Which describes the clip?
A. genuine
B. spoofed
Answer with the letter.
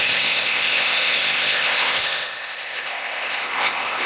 B